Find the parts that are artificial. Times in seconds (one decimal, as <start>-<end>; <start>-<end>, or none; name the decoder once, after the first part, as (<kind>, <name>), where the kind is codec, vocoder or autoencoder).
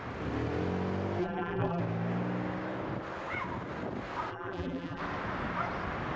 1.2-1.8 (vocoder, BigVGAN v2); 4.3-5.0